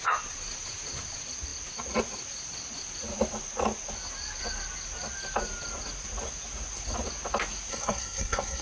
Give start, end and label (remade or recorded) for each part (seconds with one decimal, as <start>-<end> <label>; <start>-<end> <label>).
0.0-7.7 recorded; 7.7-8.6 remade